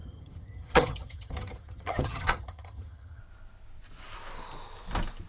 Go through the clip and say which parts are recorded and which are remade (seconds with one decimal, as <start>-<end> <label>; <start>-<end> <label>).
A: 0.0-3.2 remade; 3.2-5.3 recorded